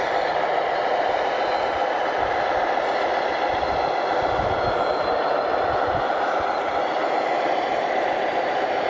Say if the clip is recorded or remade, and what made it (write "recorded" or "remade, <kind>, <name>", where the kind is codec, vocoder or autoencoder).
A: recorded